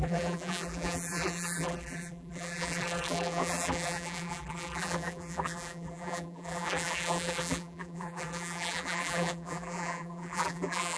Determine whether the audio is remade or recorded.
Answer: remade